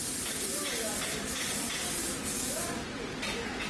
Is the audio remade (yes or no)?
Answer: no